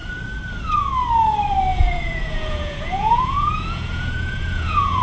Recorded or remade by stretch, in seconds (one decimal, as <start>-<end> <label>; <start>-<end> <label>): 0.0-1.7 recorded; 1.7-5.0 remade